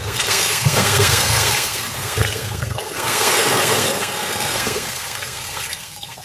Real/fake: fake